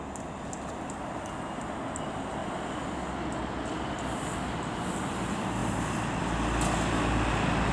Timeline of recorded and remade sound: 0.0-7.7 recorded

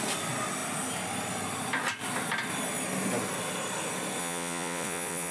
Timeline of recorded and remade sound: 0.0-4.2 recorded; 4.2-5.3 remade

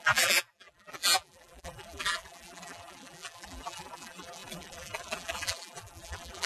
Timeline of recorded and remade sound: 0.0-6.5 remade